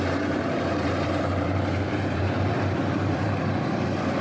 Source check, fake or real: fake